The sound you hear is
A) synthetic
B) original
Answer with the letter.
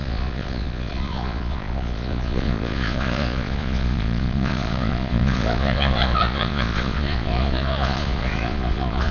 A